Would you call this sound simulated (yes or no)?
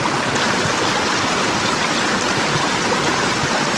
no